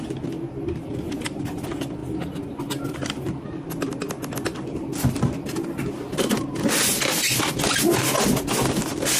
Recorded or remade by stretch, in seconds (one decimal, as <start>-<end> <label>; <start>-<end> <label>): 0.0-9.2 recorded